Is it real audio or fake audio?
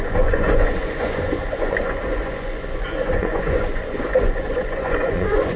fake